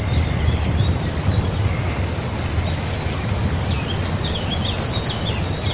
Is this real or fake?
real